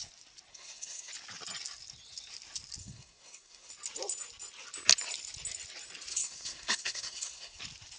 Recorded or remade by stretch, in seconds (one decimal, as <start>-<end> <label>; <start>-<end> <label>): 0.0-0.5 recorded; 0.5-1.1 remade; 1.1-2.8 recorded; 2.8-3.7 remade; 3.7-6.1 recorded; 6.1-7.6 remade; 7.6-8.0 recorded